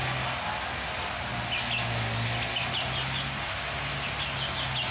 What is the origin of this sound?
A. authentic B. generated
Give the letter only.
A